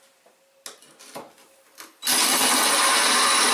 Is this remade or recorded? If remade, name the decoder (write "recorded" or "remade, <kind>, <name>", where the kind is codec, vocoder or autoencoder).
recorded